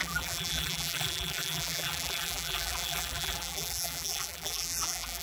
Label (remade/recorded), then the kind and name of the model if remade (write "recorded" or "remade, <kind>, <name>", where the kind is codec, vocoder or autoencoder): remade, vocoder, BigVGAN v2